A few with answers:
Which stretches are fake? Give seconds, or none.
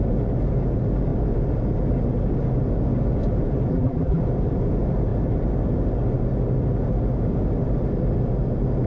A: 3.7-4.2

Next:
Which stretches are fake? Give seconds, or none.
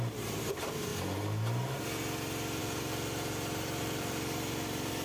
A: 0.0-0.9; 2.6-5.0